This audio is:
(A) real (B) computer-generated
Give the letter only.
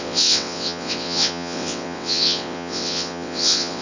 B